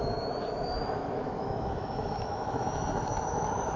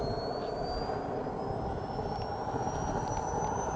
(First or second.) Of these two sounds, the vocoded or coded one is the first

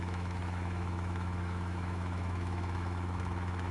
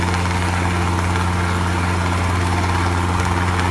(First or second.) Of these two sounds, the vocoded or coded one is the first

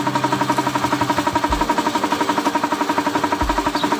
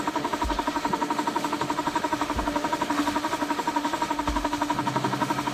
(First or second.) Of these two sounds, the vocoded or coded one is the second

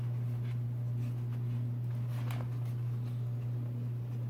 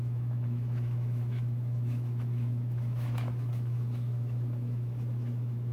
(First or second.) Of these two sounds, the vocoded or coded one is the second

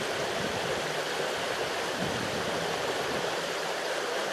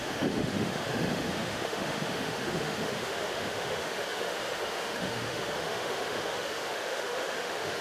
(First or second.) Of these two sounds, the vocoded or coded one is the second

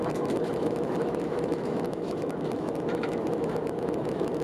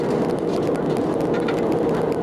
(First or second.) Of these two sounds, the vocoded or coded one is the first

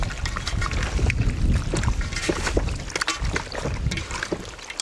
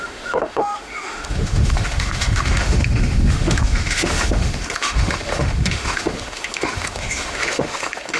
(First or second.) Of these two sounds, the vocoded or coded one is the second